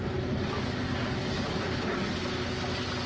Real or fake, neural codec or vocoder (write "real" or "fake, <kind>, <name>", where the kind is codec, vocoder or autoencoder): real